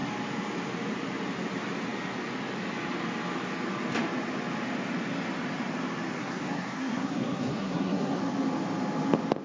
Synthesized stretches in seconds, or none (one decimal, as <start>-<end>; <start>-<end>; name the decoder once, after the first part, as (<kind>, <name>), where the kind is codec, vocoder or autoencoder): 6.2-8.2 (codec, SNAC)